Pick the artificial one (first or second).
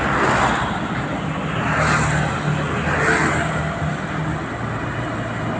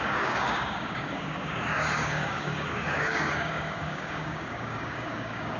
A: second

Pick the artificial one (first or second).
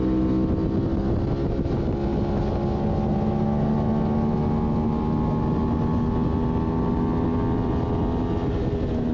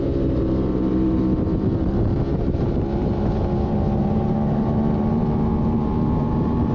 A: second